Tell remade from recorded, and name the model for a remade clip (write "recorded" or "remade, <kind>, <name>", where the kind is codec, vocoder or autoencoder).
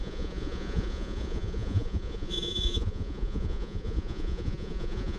remade, vocoder, Vocos